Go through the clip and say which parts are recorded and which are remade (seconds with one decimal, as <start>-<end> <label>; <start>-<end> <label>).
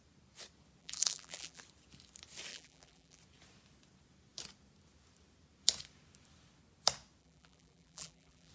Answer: 0.0-0.8 recorded; 0.8-1.6 remade; 1.6-2.5 recorded; 2.5-3.2 remade; 3.2-7.2 recorded; 7.2-8.5 remade